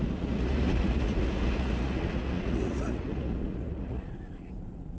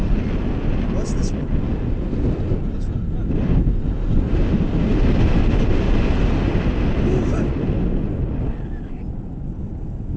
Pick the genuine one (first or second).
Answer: second